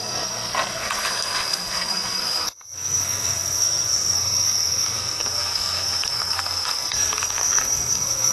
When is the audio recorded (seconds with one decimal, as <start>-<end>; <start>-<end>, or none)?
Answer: none